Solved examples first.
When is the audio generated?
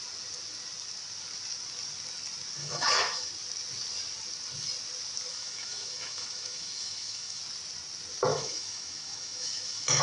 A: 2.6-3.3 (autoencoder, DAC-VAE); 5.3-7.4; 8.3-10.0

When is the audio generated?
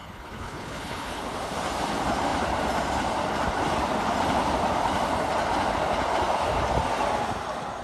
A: 0.0-1.2 (codec, HILCodec)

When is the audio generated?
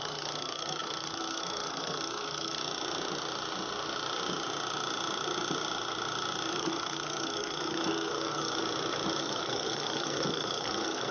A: 0.0-2.6 (codec, SNAC); 6.5-8.6; 9.2-11.1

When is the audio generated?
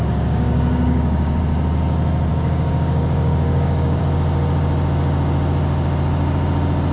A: 0.0-1.4 (codec, DAC); 2.3-4.0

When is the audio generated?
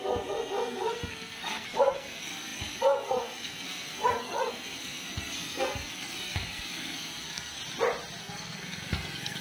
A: 0.0-7.6 (codec, SNAC); 8.2-9.4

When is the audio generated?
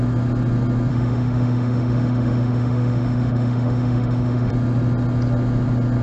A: 0.9-4.5 (autoencoder, DAC-VAE)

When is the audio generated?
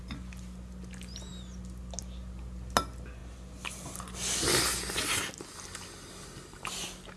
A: none